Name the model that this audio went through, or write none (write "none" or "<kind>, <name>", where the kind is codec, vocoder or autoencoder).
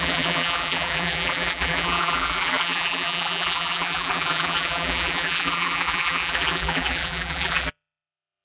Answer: vocoder, BigVGAN v2